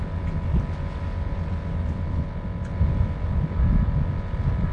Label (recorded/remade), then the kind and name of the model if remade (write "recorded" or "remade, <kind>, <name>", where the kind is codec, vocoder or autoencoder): recorded